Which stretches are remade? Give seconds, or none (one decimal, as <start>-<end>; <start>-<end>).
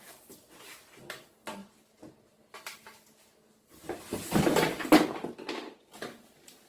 none